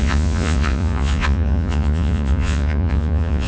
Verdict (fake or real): fake